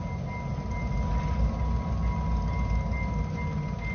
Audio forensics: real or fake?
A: real